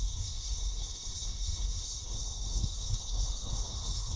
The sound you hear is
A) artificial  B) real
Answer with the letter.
A